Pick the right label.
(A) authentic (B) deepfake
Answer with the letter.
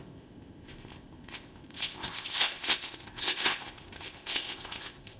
B